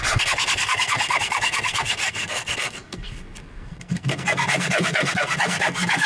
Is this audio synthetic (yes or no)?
yes